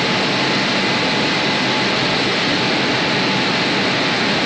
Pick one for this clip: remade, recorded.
recorded